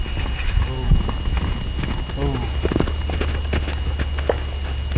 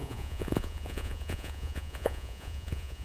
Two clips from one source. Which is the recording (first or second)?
first